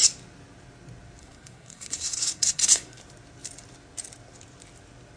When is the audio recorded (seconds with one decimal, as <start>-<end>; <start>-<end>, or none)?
0.0-1.2; 3.0-5.2